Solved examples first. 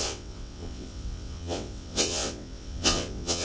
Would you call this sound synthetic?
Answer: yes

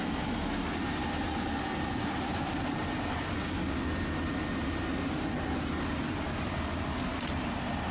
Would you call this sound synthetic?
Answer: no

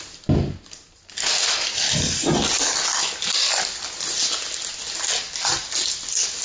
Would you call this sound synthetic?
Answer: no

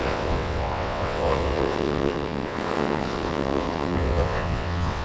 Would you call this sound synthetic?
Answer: yes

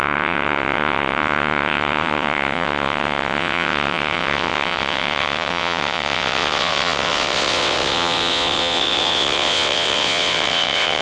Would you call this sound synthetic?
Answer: yes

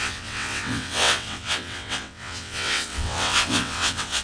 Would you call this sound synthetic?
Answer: yes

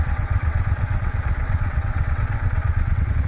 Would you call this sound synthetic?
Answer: yes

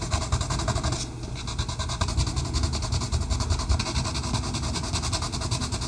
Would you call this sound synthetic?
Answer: no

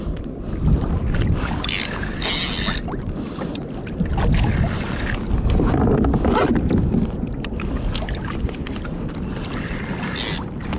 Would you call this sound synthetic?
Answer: no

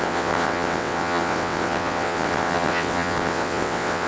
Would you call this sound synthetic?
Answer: yes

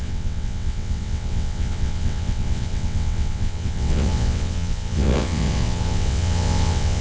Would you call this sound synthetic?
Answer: yes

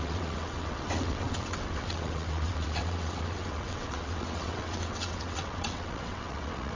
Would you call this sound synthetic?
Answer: yes